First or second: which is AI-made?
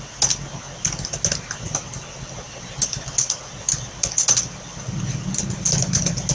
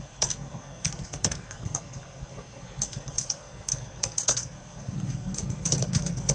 second